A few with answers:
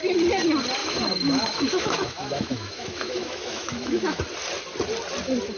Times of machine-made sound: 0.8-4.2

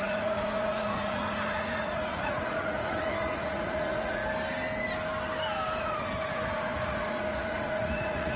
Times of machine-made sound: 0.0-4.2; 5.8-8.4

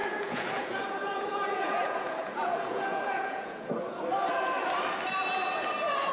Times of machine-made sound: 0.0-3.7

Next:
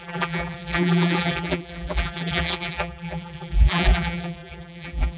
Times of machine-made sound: 0.0-5.2